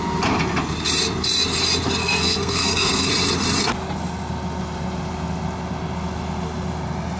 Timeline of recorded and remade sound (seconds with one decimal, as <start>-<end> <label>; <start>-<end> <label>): 0.0-2.0 recorded; 2.0-3.1 remade; 3.1-7.2 recorded